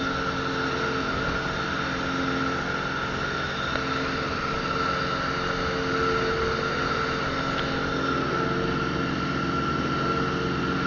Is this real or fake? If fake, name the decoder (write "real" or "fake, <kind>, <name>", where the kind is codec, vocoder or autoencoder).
real